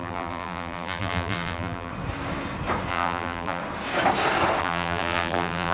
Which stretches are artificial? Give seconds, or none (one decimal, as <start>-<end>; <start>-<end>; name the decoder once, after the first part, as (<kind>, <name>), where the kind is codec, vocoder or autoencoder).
0.0-1.9 (vocoder, BigVGAN v2); 2.9-3.6; 4.6-5.7